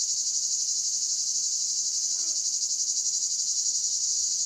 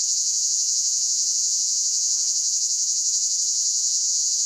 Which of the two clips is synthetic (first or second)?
second